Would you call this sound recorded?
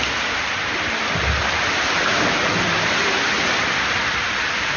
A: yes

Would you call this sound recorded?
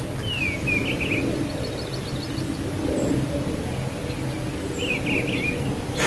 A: yes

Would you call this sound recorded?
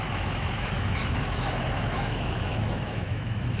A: no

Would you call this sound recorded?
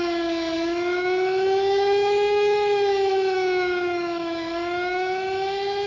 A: no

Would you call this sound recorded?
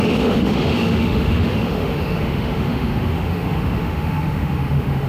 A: no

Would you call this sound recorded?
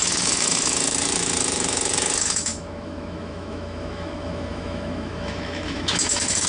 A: no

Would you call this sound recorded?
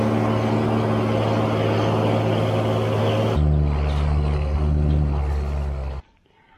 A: yes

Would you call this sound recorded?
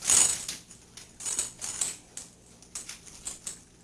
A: yes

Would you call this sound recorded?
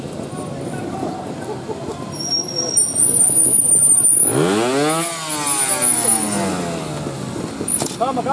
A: yes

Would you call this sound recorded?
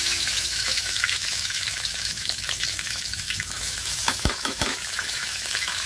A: no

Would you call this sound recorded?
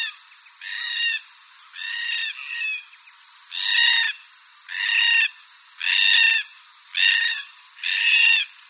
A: yes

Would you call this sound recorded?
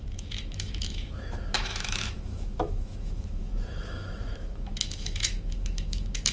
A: no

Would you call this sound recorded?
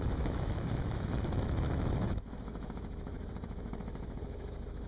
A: no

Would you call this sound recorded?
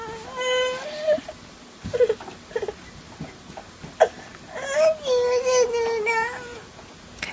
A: yes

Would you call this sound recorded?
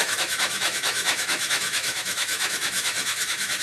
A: no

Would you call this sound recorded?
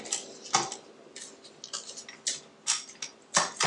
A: yes